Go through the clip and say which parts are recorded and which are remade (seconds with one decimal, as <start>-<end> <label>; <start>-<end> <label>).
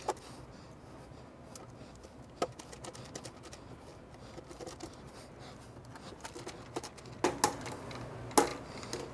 0.0-9.1 recorded